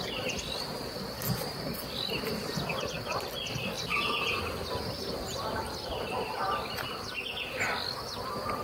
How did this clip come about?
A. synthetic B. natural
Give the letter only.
B